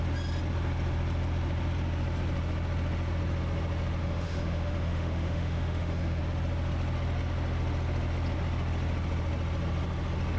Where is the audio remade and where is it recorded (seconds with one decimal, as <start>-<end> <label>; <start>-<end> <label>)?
0.0-4.0 recorded; 4.0-6.2 remade; 6.2-10.4 recorded